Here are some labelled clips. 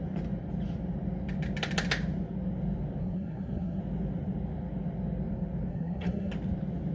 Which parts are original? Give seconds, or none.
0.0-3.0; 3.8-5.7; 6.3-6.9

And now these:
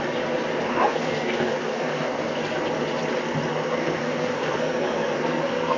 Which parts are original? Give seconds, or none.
0.0-0.7; 2.4-3.5

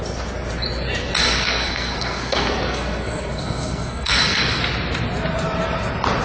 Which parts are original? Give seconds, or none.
0.0-1.2; 4.6-6.2